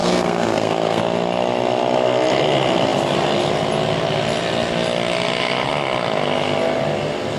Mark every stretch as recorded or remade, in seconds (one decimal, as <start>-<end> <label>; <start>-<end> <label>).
0.0-1.0 remade; 1.0-7.4 recorded